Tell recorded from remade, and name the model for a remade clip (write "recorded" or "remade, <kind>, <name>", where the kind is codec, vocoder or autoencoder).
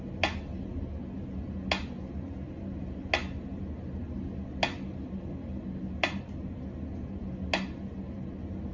recorded